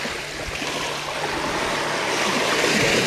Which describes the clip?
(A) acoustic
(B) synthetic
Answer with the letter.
A